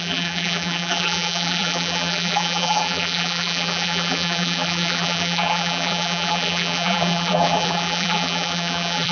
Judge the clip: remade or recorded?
remade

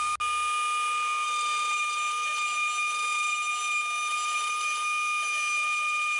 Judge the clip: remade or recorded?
recorded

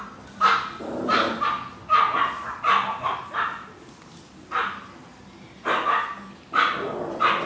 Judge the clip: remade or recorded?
recorded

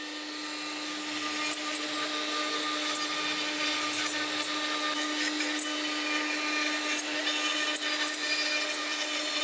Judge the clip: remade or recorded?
recorded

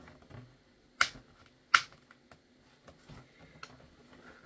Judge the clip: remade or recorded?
recorded